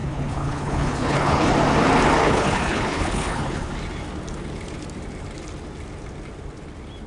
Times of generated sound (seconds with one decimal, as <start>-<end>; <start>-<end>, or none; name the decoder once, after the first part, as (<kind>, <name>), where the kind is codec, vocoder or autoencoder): 0.0-1.5 (codec, HILCodec); 2.2-3.7